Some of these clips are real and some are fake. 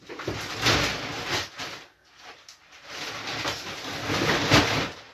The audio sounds real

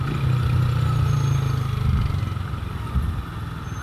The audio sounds real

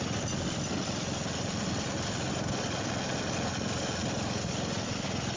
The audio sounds real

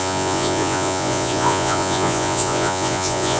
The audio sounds fake